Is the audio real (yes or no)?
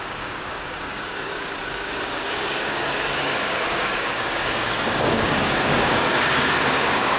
no